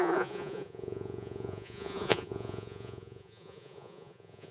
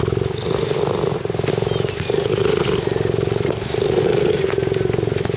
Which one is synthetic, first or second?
first